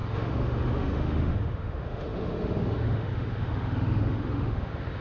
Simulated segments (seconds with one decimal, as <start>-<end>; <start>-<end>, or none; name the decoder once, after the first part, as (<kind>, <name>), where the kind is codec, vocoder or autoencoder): 0.0-5.0 (autoencoder, DAC-VAE)